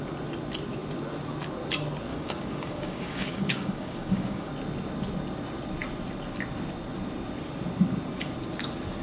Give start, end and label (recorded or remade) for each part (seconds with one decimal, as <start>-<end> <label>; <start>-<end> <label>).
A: 0.0-2.1 recorded; 2.1-4.5 remade; 4.5-9.0 recorded